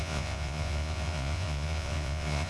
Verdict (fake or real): fake